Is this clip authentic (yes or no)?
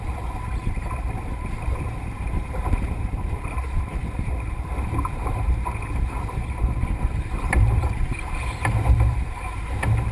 no